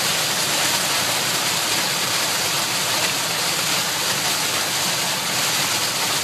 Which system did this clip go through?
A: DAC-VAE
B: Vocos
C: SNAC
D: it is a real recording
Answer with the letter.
D